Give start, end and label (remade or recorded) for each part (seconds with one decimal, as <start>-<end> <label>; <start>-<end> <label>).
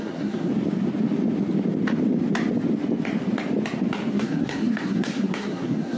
0.0-0.5 remade; 0.5-4.1 recorded; 4.1-6.0 remade